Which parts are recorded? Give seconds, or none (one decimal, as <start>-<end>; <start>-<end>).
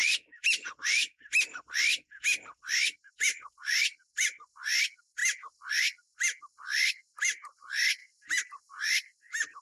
1.3-8.0; 8.9-9.6